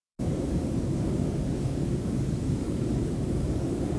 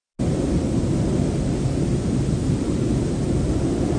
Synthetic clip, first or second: first